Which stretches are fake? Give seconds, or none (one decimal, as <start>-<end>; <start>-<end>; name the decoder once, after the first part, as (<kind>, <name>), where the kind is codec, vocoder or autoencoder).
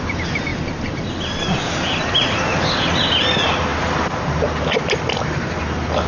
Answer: none